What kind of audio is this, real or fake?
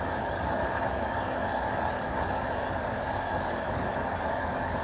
fake